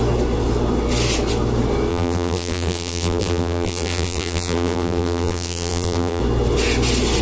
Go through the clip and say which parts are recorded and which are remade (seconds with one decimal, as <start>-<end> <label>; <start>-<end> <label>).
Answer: 0.0-1.9 recorded; 1.9-6.2 remade; 6.2-7.2 recorded